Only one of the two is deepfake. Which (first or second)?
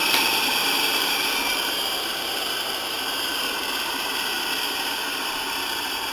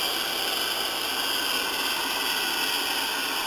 first